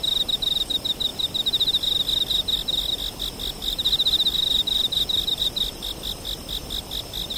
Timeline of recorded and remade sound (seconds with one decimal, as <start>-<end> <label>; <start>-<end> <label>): 0.0-7.4 recorded